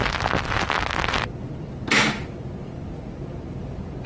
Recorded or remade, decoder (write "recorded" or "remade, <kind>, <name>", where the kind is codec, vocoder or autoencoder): recorded